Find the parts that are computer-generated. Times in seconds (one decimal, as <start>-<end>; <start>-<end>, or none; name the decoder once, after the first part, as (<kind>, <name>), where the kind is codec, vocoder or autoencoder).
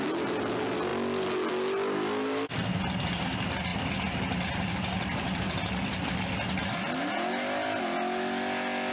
none